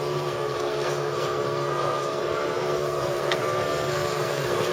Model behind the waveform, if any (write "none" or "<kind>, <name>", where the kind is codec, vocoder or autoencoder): codec, SNAC